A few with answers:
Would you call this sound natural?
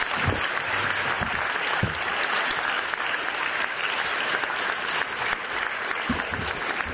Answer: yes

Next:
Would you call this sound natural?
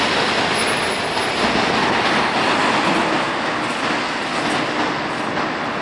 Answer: yes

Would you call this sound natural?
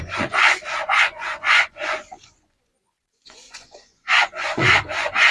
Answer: no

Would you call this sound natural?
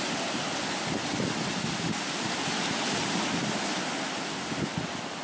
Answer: yes